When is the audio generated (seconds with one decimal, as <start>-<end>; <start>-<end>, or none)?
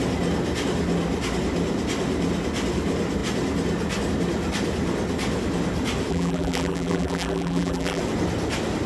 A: 6.1-8.0